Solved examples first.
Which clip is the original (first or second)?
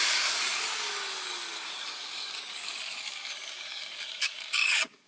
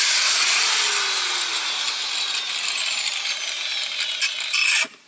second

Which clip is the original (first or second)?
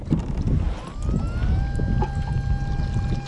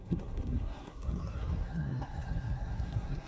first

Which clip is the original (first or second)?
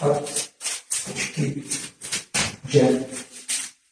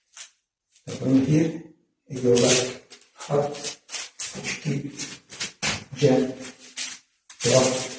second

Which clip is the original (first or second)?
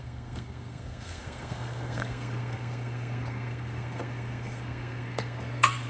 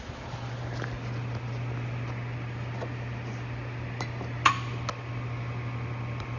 second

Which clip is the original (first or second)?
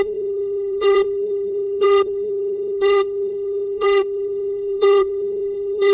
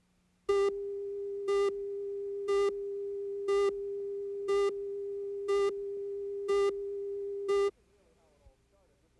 second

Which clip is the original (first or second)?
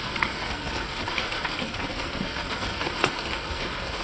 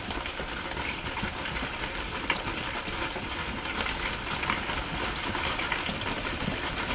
second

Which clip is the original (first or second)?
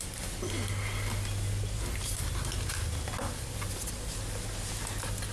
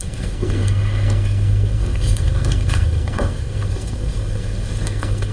first